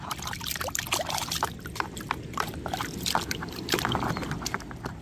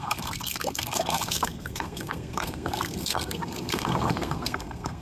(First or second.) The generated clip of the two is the second